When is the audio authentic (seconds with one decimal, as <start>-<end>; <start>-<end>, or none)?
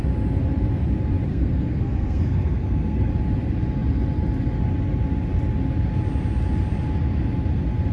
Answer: 0.0-1.3; 3.1-7.9